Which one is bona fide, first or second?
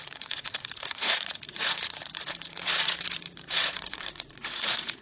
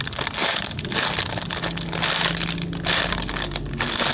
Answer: second